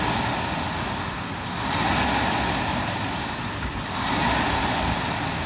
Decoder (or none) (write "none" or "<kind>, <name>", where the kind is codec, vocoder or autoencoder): none